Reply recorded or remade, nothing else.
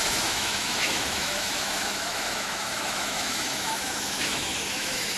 remade